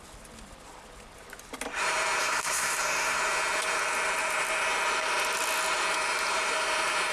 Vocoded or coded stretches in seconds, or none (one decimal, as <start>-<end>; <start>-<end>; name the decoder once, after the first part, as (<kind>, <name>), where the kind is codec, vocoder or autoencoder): 2.2-3.2 (codec, SNAC)